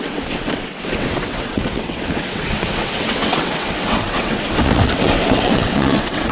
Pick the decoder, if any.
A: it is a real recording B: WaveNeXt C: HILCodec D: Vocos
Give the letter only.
B